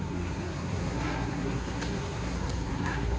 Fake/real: fake